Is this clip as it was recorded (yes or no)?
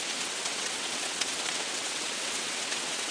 no